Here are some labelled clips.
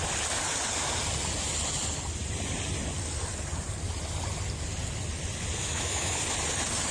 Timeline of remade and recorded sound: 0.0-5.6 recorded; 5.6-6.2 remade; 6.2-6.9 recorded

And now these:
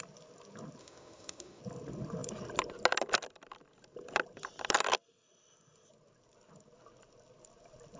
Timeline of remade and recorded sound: 0.0-0.8 recorded; 0.8-1.6 remade; 1.6-8.0 recorded

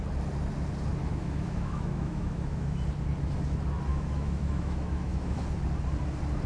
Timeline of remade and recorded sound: 0.0-1.1 recorded; 1.1-2.8 remade; 2.8-3.9 recorded; 3.9-5.4 remade; 5.4-6.5 recorded

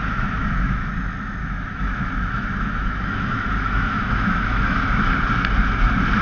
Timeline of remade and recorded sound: 0.0-0.9 remade; 0.9-1.4 recorded; 1.4-5.1 remade; 5.1-6.2 recorded

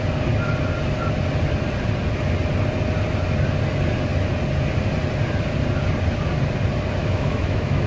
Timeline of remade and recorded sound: 0.0-7.0 recorded; 7.0-7.9 remade

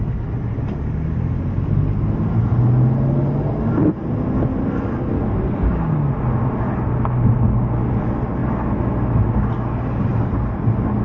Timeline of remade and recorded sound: 0.0-11.0 recorded

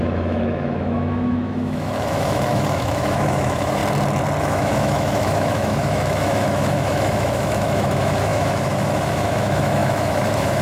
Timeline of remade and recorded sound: 0.0-3.8 remade; 3.8-4.4 recorded; 4.4-10.6 remade